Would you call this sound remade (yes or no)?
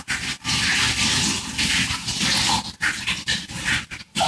no